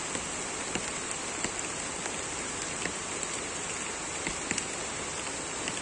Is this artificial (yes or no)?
no